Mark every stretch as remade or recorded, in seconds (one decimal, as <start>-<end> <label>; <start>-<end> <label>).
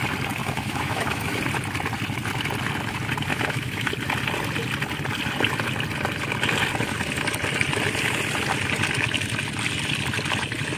0.0-0.4 recorded; 0.4-1.4 remade; 1.4-3.3 recorded; 3.3-3.9 remade; 3.9-10.8 recorded